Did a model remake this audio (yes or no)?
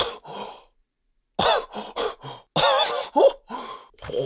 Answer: no